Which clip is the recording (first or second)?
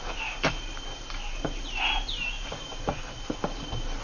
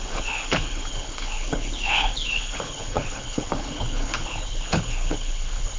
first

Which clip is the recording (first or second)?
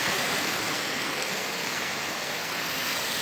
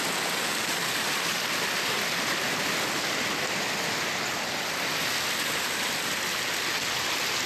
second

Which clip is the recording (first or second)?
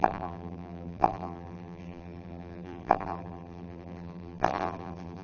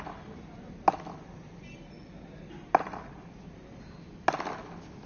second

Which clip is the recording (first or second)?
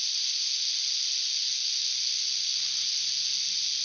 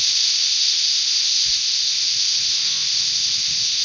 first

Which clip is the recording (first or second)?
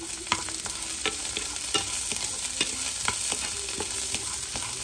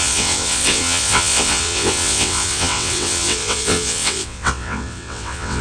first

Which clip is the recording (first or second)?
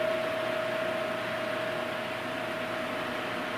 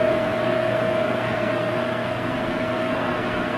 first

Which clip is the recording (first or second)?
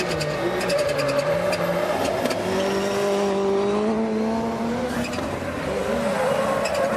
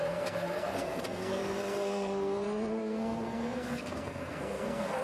first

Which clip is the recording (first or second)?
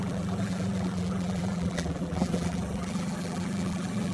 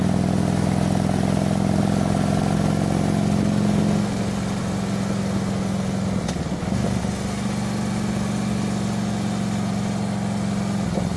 second